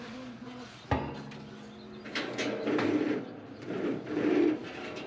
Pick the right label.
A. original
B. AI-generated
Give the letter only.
A